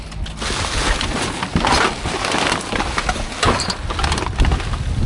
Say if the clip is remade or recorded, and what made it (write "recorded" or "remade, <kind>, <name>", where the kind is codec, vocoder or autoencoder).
recorded